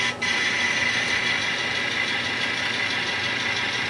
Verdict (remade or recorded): recorded